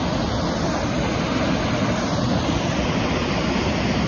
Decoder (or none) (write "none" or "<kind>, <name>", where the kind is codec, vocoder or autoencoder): none